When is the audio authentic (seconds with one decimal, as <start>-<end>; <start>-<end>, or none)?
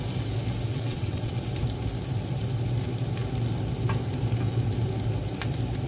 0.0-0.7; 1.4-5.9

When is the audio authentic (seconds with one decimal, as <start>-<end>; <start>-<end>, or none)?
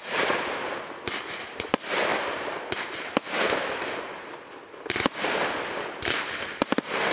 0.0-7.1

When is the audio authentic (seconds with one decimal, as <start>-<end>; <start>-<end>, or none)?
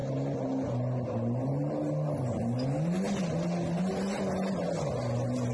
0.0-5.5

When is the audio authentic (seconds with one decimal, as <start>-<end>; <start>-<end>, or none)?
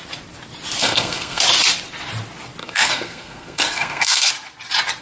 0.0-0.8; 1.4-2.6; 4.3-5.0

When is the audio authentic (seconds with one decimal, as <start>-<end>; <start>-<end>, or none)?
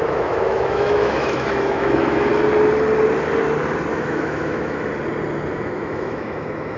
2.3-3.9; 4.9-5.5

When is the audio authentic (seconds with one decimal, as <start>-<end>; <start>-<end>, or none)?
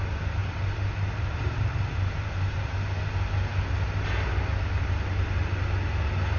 0.0-0.4; 2.6-6.4